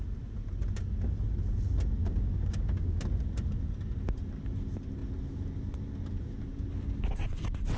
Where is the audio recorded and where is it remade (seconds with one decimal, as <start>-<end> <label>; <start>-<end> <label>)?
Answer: 0.0-2.0 recorded; 2.0-3.0 remade; 3.0-7.8 recorded